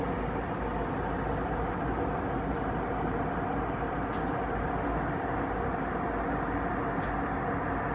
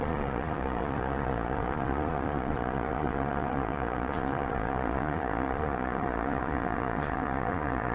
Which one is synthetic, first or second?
second